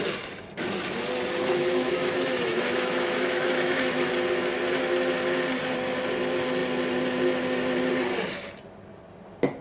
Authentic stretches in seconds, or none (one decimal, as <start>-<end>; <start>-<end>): 0.0-1.4; 4.1-9.6

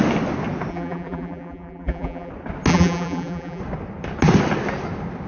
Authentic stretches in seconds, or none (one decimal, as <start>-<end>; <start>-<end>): 0.0-0.7; 2.3-2.7; 3.6-5.3